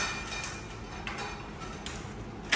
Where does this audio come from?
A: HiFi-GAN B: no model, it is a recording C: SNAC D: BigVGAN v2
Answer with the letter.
B